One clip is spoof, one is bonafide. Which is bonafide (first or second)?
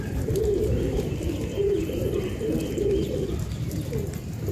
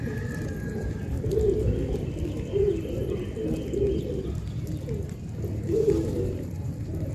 second